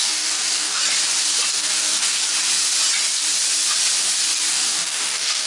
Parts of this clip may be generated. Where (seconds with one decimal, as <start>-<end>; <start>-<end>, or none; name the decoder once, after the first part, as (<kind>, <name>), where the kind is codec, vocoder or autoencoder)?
0.0-0.8 (codec, DAC); 1.5-2.3; 4.5-5.5